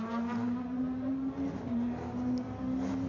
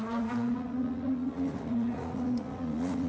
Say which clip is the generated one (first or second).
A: second